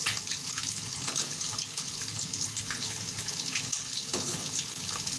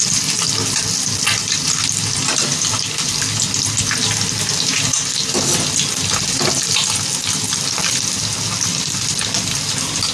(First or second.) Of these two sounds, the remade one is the first